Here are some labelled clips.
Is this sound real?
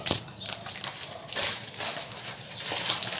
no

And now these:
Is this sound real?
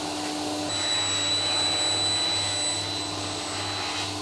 yes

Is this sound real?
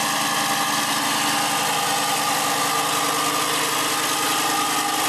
yes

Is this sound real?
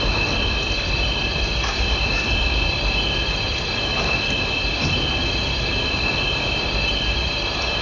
yes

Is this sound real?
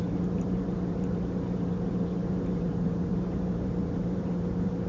no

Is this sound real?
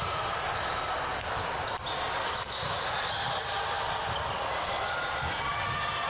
yes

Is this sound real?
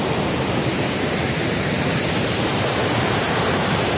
no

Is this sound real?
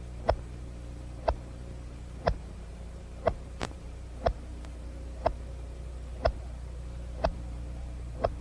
no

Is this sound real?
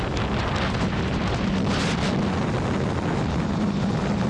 yes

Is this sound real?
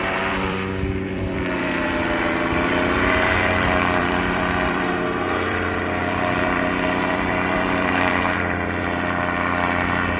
no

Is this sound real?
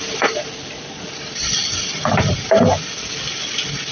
no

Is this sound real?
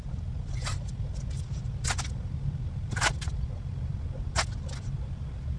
yes